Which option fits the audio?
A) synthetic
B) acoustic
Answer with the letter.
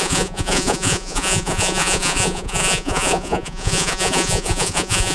A